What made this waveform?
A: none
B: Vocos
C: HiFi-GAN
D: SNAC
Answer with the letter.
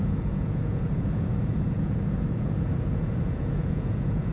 B